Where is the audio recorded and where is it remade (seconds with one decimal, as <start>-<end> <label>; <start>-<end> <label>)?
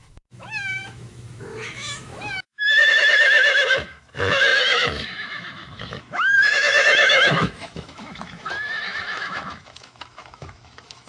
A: 0.0-11.1 remade